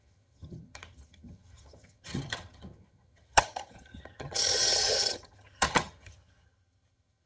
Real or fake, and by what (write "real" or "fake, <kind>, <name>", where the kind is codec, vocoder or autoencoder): fake, vocoder, HiFi-GAN